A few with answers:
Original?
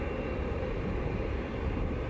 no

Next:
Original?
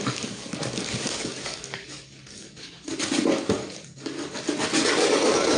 no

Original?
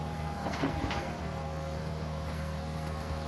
no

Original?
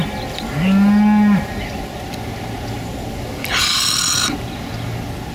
yes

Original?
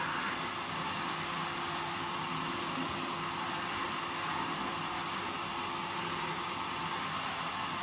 yes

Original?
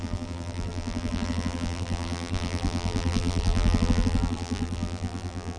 no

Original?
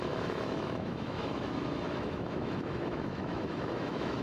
no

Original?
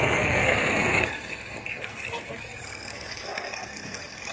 no